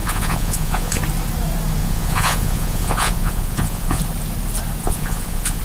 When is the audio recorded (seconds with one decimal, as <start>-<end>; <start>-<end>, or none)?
1.0-1.8; 4.0-4.8